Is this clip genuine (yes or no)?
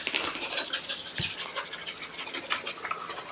yes